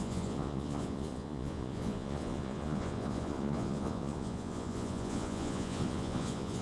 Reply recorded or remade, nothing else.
remade